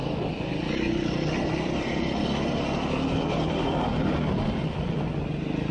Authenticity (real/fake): real